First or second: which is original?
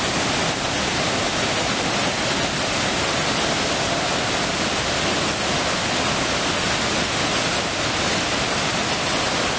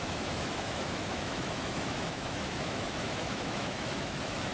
first